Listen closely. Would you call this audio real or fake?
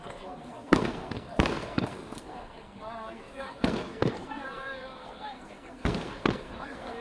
fake